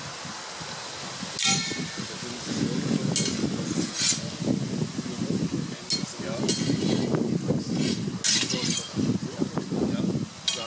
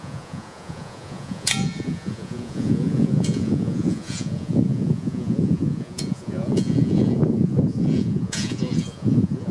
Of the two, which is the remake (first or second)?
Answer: second